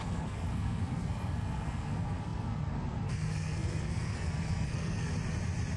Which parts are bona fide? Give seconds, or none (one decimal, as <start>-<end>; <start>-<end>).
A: 5.1-5.8